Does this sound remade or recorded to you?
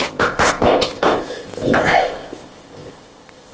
remade